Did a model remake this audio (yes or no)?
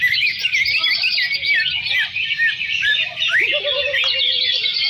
no